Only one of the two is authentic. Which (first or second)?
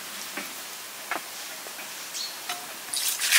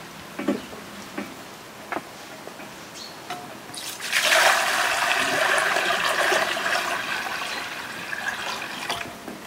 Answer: second